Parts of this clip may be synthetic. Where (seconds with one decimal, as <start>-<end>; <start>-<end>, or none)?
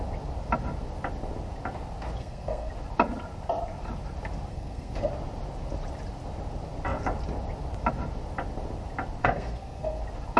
2.2-2.7; 4.5-5.1; 9.2-10.0